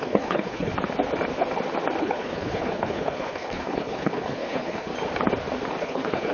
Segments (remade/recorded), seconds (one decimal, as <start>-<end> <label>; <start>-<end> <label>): 0.0-0.7 remade; 0.7-2.0 recorded; 2.0-4.9 remade; 4.9-5.8 recorded; 5.8-6.3 remade

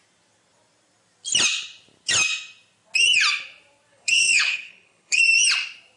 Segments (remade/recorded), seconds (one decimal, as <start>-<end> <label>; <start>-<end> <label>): 0.0-3.9 recorded; 3.9-5.2 remade; 5.2-6.0 recorded

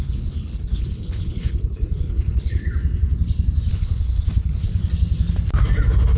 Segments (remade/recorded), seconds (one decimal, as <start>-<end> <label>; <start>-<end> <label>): 0.0-2.6 remade; 2.6-3.7 recorded; 3.7-4.7 remade; 4.7-6.2 recorded

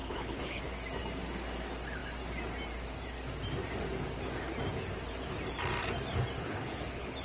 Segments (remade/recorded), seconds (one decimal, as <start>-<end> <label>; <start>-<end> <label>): 0.0-0.6 remade; 0.6-6.4 recorded; 6.4-7.2 remade

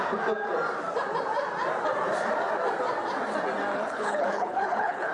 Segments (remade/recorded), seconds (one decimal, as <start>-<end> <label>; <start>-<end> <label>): 0.0-3.7 recorded; 3.7-5.1 remade